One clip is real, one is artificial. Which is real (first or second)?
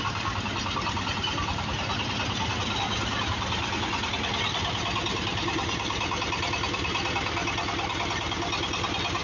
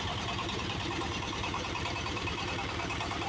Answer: first